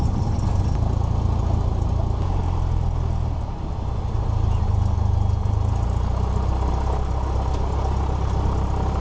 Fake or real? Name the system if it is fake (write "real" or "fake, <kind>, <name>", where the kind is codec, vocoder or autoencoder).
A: real